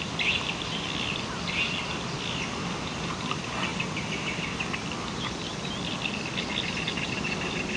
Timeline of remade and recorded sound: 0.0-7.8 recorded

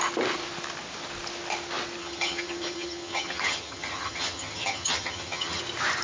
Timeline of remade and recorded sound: 0.0-2.0 recorded; 2.0-5.6 remade; 5.6-6.0 recorded

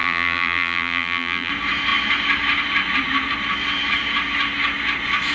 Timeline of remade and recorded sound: 0.0-1.5 remade; 1.5-5.3 recorded

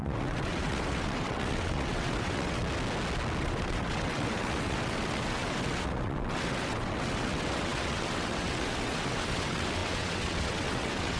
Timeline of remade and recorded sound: 0.0-2.6 remade; 2.6-3.4 recorded; 3.4-11.2 remade